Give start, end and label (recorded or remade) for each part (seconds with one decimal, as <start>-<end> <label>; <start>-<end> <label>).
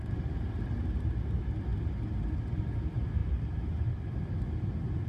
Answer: 0.0-5.1 recorded